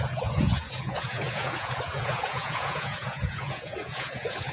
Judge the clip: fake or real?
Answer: fake